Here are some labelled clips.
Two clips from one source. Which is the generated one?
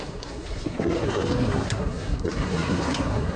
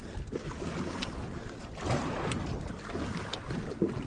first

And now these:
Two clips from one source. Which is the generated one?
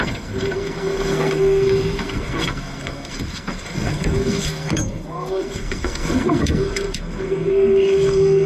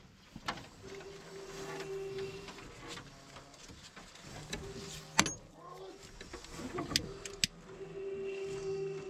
first